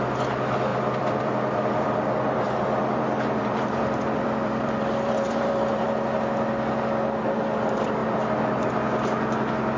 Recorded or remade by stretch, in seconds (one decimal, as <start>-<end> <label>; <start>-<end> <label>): 0.0-0.7 recorded; 0.7-5.9 remade; 5.9-8.0 recorded; 8.0-8.7 remade; 8.7-9.8 recorded